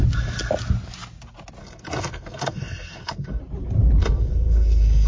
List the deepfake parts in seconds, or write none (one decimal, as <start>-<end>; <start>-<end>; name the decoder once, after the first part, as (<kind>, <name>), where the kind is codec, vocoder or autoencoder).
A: 1.6-3.4 (codec, SNAC); 4.0-5.1